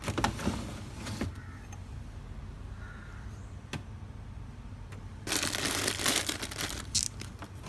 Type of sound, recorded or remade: recorded